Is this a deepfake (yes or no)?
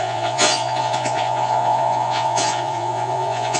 yes